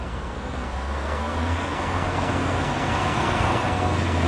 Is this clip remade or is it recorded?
remade